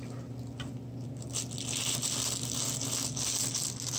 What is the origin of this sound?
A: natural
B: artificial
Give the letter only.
A